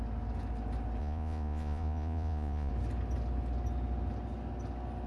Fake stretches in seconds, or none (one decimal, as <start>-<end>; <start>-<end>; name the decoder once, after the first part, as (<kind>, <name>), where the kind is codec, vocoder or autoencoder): 1.0-2.7 (vocoder, Vocos)